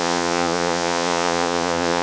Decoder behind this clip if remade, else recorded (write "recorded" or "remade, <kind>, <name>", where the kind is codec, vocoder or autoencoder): remade, vocoder, Vocos